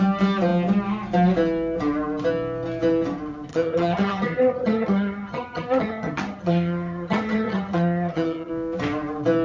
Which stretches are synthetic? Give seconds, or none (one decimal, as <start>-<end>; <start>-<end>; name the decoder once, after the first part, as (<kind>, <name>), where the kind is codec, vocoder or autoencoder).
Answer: 3.5-8.5 (vocoder, HiFi-GAN)